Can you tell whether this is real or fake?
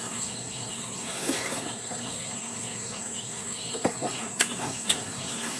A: fake